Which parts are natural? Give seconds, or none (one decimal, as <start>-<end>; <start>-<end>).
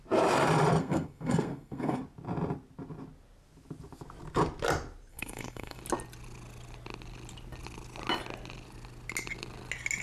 0.0-0.8; 2.0-5.1; 5.8-10.0